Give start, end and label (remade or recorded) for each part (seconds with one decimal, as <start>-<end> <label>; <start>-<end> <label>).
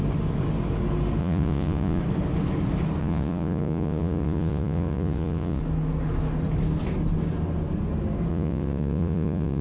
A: 0.0-1.2 recorded; 1.2-2.0 remade; 2.0-3.0 recorded; 3.0-5.6 remade; 5.6-8.3 recorded; 8.3-9.6 remade